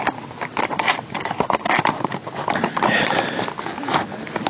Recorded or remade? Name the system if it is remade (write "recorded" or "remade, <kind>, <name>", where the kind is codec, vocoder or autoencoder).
recorded